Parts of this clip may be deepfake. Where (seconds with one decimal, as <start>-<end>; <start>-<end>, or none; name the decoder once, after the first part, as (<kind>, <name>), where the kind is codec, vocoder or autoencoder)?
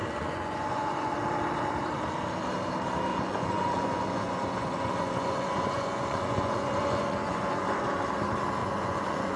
0.0-1.1 (vocoder, Vocos); 3.1-7.8; 8.6-9.4